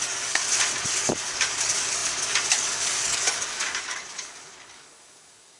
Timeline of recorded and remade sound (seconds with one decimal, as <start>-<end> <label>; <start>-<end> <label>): 0.0-0.4 remade; 0.4-1.0 recorded; 1.0-5.6 remade